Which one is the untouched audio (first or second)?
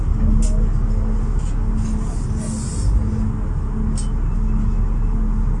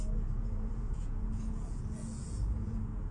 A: first